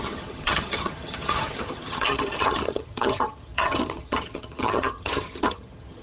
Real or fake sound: fake